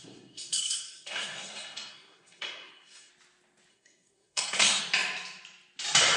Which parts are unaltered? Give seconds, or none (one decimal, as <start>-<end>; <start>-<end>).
3.1-3.7; 4.8-6.2